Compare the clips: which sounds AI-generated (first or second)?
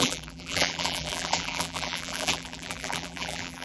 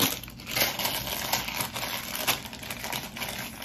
first